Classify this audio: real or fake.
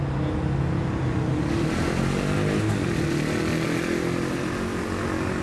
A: real